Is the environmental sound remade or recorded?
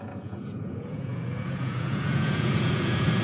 remade